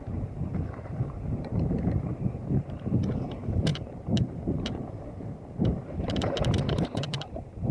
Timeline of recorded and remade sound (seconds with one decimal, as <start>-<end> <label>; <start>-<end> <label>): 0.0-7.7 remade